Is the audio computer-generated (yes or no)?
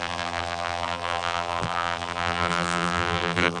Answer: yes